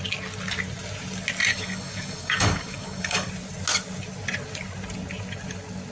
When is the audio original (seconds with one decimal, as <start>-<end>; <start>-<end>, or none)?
0.0-1.5; 3.3-5.9